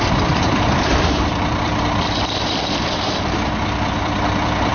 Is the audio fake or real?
fake